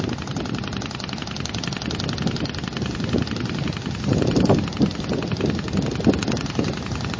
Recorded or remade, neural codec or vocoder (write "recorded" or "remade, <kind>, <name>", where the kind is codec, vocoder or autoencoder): recorded